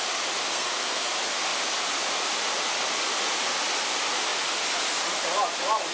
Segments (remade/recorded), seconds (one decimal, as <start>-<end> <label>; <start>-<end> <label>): 0.0-0.5 recorded; 0.5-1.1 remade; 1.1-5.9 recorded